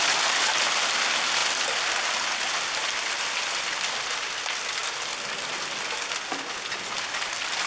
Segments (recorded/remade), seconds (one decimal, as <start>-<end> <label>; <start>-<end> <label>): 0.0-7.7 recorded